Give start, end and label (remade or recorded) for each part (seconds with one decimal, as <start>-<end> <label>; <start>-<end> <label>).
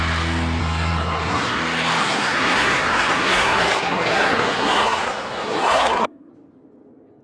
0.0-0.6 recorded; 0.6-1.6 remade; 1.6-2.0 recorded; 2.0-6.3 remade; 6.3-7.2 recorded